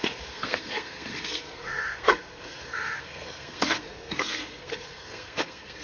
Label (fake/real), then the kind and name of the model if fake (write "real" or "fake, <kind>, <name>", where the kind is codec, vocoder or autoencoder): fake, codec, SNAC